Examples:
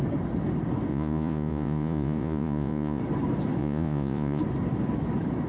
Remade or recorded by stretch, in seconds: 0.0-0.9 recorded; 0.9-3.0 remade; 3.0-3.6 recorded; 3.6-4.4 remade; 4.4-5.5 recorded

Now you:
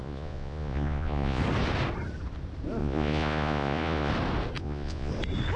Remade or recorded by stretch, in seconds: 0.0-1.4 remade; 1.4-2.8 recorded; 2.8-4.1 remade; 4.1-4.6 recorded; 4.6-5.1 remade; 5.1-5.6 recorded

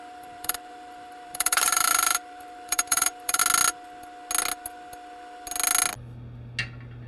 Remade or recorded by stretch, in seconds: 0.0-3.4 remade; 3.4-7.1 recorded

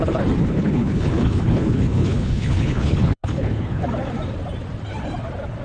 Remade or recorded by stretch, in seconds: 0.0-0.4 recorded; 0.4-3.8 remade; 3.8-5.6 recorded

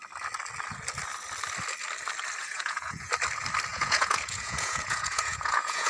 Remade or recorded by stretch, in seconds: 0.0-2.4 recorded; 2.4-3.1 remade; 3.1-3.7 recorded; 3.7-5.9 remade